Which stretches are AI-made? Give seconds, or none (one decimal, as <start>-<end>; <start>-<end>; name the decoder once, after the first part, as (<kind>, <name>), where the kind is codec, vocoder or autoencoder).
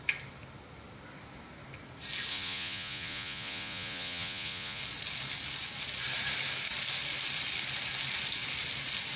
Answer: 2.3-4.8 (vocoder, Vocos)